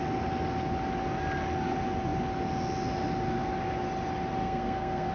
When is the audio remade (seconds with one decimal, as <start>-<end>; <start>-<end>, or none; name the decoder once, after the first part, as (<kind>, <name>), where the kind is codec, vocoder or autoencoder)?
4.4-5.1 (codec, SNAC)